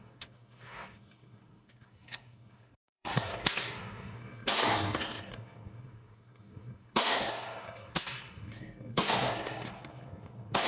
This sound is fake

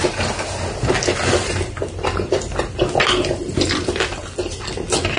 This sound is real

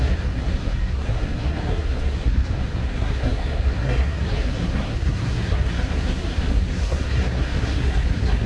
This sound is fake